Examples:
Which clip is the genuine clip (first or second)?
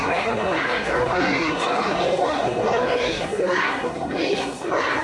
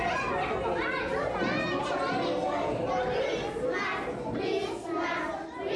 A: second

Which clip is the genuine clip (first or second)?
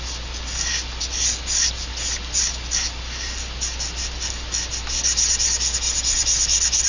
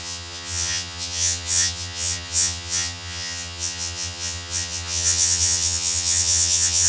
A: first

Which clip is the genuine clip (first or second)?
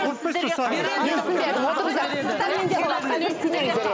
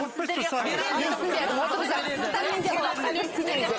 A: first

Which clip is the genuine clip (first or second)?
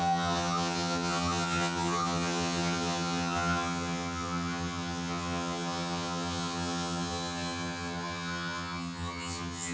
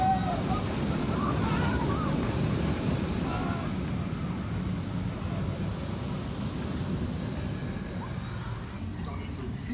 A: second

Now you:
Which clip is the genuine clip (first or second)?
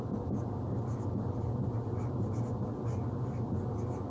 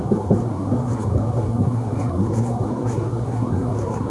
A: first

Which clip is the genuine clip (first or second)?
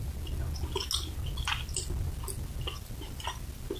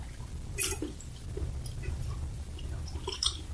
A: first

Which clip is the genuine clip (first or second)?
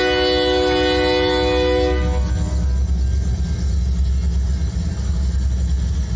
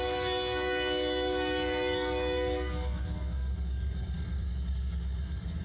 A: first